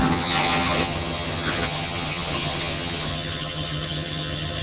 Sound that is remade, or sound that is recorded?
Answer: remade